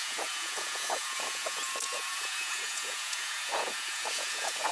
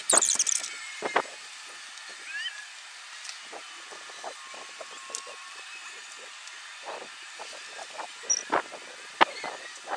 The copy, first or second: first